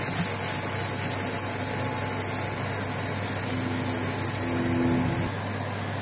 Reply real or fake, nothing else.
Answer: real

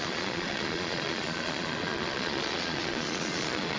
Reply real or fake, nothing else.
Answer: fake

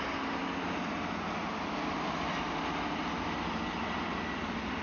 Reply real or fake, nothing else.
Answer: real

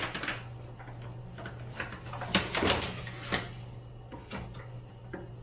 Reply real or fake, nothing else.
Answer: real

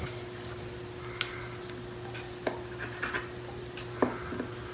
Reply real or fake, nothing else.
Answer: real